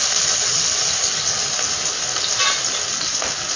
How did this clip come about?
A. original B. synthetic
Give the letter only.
A